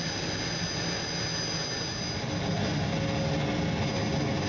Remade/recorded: recorded